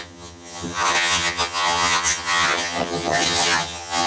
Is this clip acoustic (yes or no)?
no